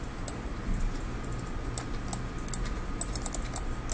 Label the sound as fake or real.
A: real